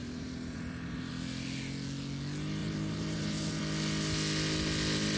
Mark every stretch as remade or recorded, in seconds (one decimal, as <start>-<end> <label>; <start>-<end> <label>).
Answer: 0.0-1.1 remade; 1.1-2.6 recorded; 2.6-3.6 remade; 3.6-5.2 recorded